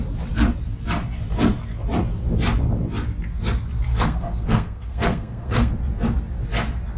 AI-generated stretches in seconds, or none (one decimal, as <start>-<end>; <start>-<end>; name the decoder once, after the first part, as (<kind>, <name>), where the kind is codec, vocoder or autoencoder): 3.9-5.7 (codec, SNAC)